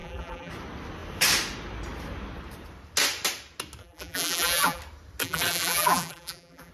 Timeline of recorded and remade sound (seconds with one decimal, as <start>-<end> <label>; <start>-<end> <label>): 0.0-0.5 remade; 0.5-3.8 recorded; 3.8-4.8 remade; 4.8-5.2 recorded; 5.2-6.7 remade